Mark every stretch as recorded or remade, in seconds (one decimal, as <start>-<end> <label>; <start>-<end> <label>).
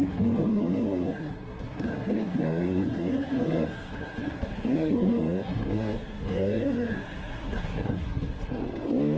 0.0-8.6 remade; 8.6-9.2 recorded